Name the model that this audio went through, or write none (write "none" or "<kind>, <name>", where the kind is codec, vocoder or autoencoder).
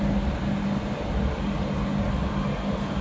none